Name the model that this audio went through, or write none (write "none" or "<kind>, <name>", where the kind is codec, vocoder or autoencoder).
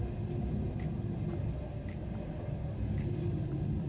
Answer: none